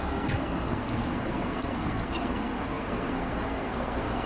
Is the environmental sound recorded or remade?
remade